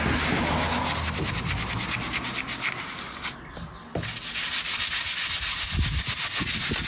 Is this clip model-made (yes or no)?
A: no